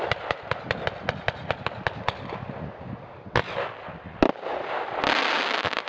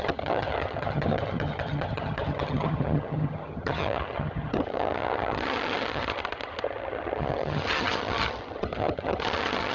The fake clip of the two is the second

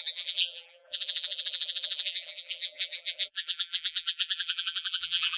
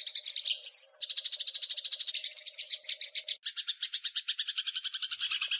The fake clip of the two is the first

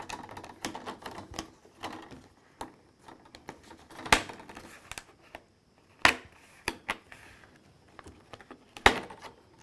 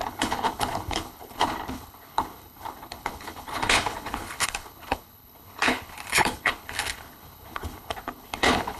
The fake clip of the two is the second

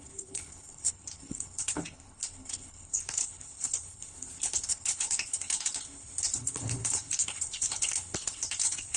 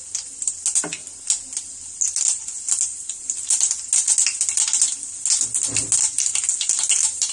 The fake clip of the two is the first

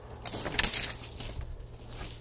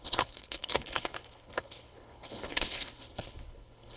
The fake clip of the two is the second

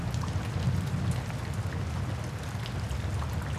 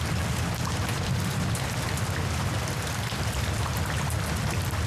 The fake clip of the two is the second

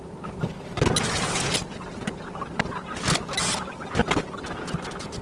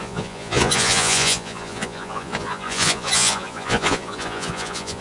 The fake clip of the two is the second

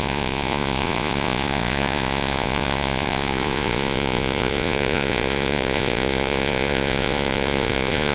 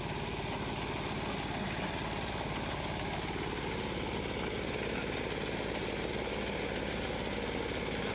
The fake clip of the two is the first